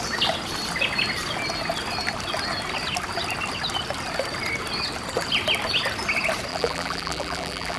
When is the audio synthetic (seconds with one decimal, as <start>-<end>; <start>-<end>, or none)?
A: 6.5-7.8